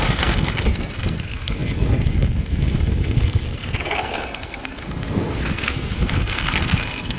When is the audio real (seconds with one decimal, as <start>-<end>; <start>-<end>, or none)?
none